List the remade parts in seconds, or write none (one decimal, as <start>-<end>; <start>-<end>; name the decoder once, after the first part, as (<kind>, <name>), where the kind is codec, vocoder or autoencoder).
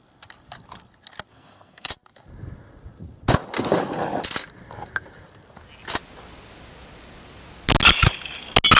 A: 1.3-1.9 (codec, SNAC)